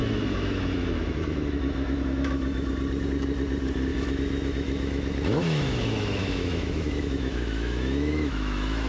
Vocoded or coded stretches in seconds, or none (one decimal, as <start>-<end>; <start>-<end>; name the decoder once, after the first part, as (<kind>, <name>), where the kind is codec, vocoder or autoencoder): 0.0-2.7 (autoencoder, DAC-VAE); 3.9-8.9